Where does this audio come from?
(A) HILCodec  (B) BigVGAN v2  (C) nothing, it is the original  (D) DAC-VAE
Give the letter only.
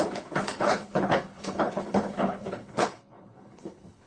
A